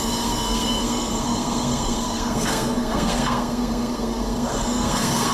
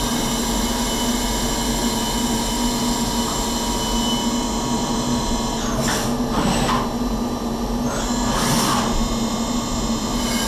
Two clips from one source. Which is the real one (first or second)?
second